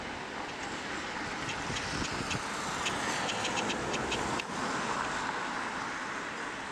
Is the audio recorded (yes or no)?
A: yes